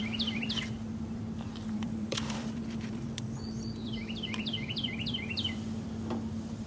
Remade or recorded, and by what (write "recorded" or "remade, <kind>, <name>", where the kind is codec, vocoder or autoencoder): remade, vocoder, BigVGAN v2